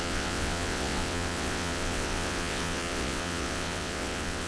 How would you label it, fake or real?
fake